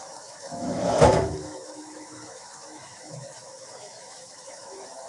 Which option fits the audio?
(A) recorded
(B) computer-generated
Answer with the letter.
B